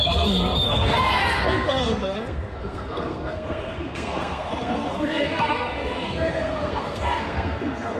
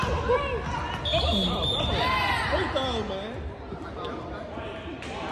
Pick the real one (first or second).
second